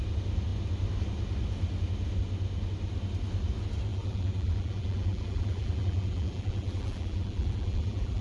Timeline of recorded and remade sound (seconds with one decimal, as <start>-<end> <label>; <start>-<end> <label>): 0.0-3.9 recorded; 3.9-8.2 remade